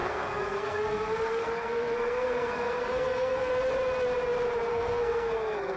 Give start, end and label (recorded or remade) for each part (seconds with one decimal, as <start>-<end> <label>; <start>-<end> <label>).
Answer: 0.0-3.5 remade; 3.5-4.7 recorded; 4.7-5.8 remade